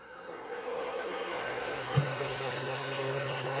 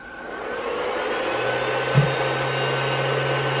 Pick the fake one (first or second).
first